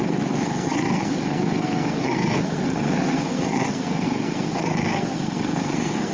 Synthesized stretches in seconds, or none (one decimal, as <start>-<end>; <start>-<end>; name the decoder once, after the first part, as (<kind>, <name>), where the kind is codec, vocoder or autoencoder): 0.0-6.1 (codec, SNAC)